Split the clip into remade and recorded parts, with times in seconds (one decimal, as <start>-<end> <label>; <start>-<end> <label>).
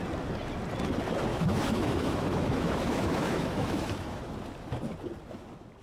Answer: 0.0-1.3 recorded; 1.3-4.3 remade; 4.3-5.8 recorded